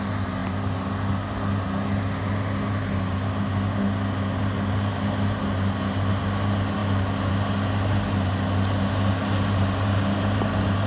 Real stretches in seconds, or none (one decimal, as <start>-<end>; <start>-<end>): 0.0-10.9